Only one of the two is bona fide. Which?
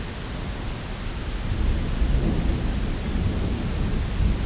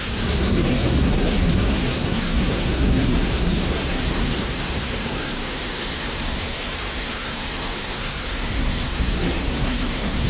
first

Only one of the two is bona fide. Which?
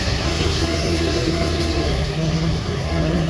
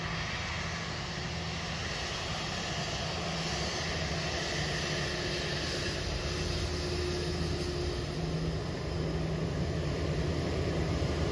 second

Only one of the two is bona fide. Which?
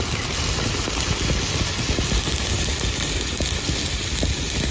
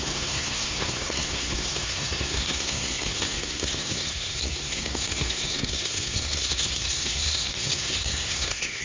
first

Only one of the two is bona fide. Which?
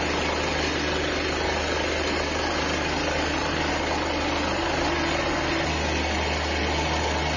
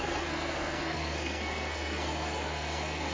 first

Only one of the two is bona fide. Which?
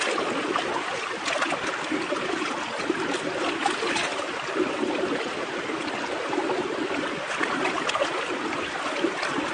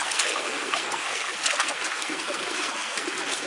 first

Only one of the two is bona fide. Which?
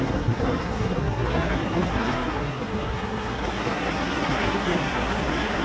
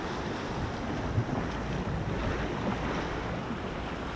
second